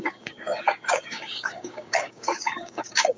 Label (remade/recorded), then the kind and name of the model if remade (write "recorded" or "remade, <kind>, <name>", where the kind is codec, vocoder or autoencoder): remade, codec, DAC